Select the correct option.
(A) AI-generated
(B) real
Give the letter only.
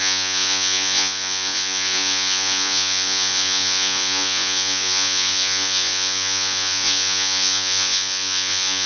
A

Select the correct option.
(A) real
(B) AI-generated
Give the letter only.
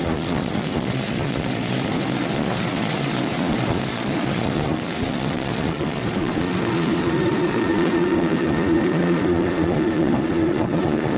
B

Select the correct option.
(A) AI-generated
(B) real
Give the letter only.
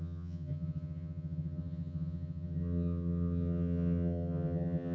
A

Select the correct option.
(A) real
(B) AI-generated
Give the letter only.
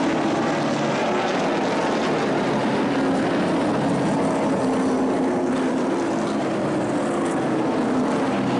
A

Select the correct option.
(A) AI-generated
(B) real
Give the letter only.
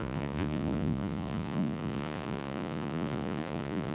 A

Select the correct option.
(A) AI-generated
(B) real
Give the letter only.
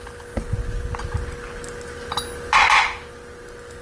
B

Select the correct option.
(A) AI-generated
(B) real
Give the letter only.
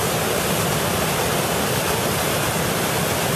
B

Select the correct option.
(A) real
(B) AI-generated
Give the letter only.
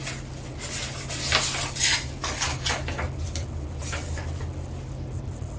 A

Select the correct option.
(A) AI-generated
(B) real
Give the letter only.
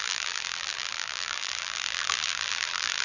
A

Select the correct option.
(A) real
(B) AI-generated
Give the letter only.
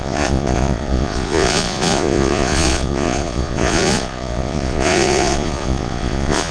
B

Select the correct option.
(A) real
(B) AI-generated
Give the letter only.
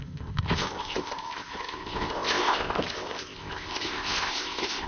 B